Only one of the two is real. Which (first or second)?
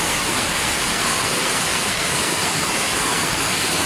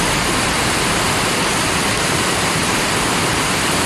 second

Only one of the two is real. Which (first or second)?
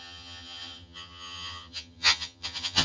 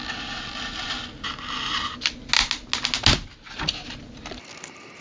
second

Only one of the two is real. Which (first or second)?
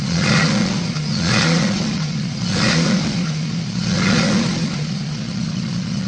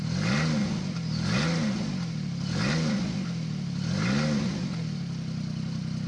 second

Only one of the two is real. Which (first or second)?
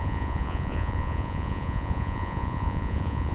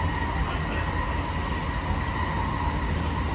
second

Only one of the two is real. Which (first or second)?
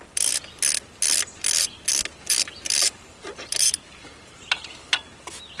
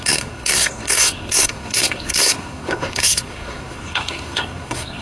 first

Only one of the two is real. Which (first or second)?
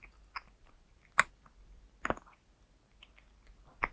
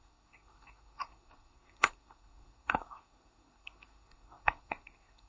first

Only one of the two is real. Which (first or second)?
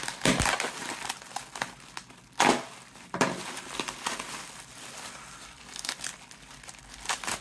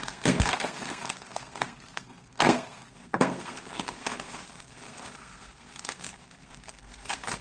first